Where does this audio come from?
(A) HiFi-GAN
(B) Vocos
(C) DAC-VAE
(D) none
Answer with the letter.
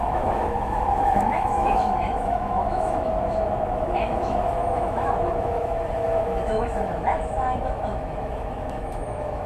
C